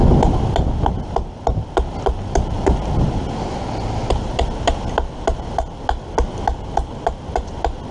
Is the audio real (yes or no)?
yes